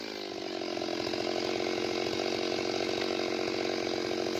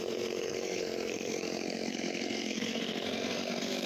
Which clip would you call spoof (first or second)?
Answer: second